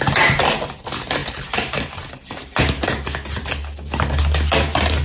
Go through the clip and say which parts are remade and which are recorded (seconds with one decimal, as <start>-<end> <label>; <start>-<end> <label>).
0.0-1.2 recorded; 1.2-1.8 remade; 1.8-5.0 recorded